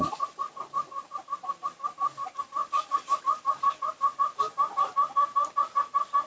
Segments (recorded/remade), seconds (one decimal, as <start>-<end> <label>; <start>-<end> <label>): 0.0-6.3 recorded